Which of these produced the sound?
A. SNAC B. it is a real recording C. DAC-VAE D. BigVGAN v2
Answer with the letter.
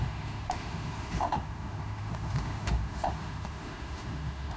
C